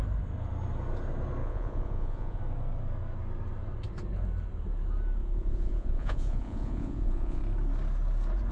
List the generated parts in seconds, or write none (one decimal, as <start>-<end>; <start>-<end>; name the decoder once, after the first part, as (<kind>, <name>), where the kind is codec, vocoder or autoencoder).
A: 1.4-2.4 (vocoder, Vocos); 5.2-7.4